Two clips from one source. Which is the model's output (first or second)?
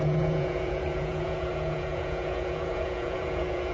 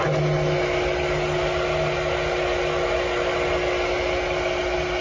first